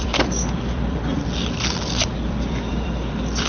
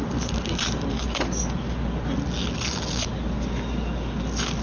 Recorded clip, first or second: second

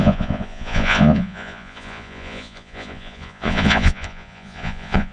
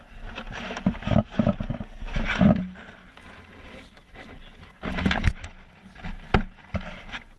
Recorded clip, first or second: second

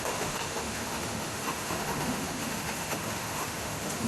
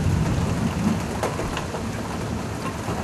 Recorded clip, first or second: second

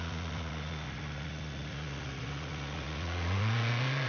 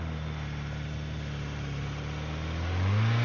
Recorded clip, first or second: second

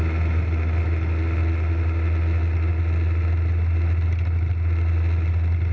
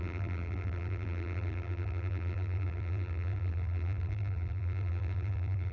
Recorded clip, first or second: first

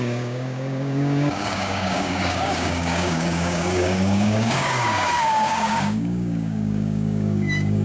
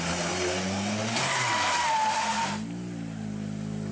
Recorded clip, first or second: second